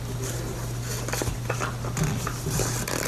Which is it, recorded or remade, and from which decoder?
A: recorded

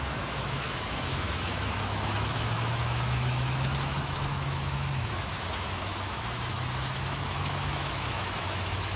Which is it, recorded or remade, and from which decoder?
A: remade, autoencoder, DAC-VAE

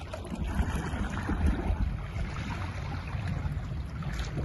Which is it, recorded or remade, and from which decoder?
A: recorded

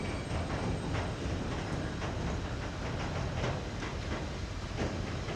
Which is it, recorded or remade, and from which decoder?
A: recorded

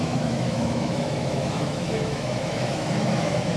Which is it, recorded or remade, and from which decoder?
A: remade, autoencoder, DAC-VAE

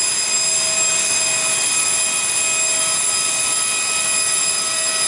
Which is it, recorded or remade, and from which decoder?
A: recorded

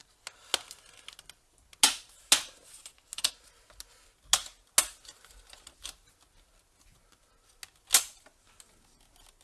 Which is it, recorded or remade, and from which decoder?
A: recorded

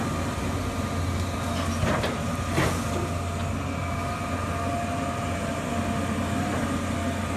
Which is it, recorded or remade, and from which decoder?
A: recorded